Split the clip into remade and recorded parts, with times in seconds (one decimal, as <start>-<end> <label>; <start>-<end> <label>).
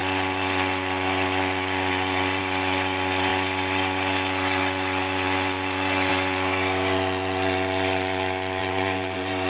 0.0-8.6 recorded; 8.6-9.5 remade